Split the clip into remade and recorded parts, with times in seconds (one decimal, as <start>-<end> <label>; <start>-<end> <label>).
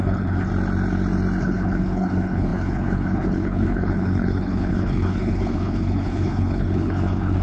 0.0-0.5 remade; 0.5-1.4 recorded; 1.4-7.4 remade